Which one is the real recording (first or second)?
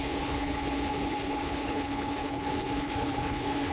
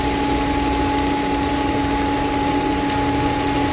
second